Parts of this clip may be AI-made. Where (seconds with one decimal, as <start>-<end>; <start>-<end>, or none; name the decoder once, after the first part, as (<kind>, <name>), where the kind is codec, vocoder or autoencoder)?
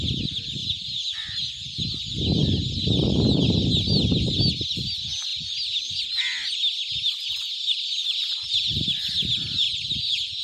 5.3-5.9 (vocoder, BigVGAN v2)